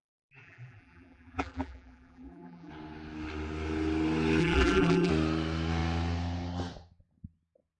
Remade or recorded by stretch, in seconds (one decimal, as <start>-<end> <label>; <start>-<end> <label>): 0.0-0.4 recorded; 0.4-2.7 remade; 2.7-4.4 recorded; 4.4-5.1 remade; 5.1-7.8 recorded